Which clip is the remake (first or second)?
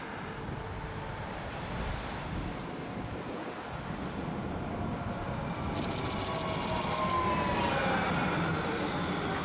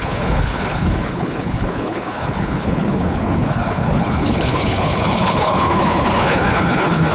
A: second